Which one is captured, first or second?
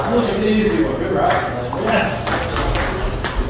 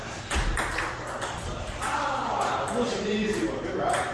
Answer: first